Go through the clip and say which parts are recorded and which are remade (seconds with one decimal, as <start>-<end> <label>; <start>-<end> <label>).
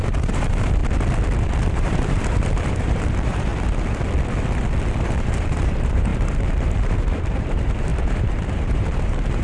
0.0-0.8 remade; 0.8-1.6 recorded; 1.6-3.5 remade; 3.5-5.2 recorded; 5.2-9.4 remade